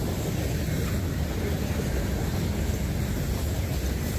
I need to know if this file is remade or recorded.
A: recorded